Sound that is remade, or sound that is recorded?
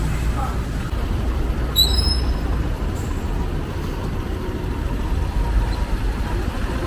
remade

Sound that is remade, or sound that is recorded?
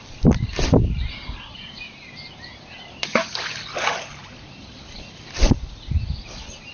recorded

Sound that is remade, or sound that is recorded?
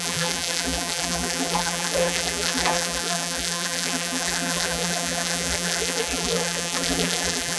remade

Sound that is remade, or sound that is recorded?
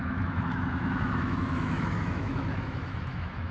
remade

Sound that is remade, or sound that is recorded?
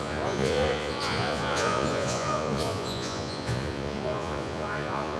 remade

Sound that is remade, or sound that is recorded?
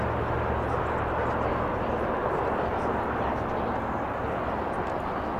recorded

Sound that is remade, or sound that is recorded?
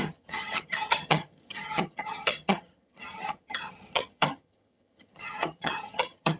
remade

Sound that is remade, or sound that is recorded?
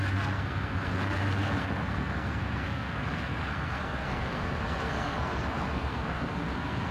remade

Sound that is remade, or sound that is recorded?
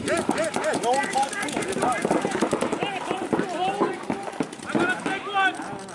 recorded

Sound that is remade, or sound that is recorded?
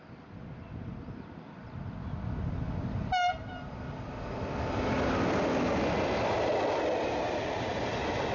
recorded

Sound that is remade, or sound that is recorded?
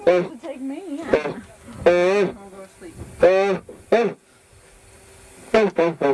recorded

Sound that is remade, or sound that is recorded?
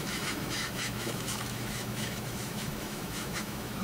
remade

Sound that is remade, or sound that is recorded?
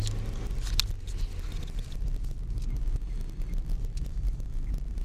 recorded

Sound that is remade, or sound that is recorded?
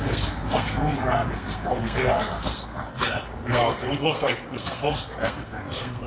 remade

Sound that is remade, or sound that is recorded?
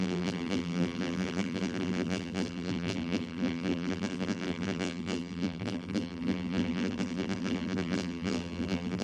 remade